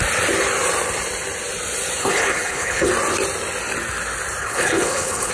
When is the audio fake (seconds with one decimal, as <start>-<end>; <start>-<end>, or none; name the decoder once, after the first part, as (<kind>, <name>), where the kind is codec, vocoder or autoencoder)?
2.0-2.9 (codec, HILCodec); 4.4-5.3